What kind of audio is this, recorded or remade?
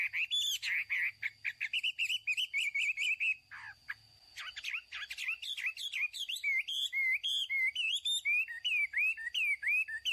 recorded